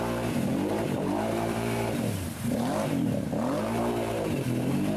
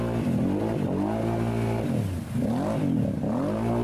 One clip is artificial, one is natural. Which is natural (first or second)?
second